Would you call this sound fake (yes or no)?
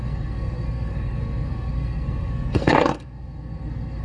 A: yes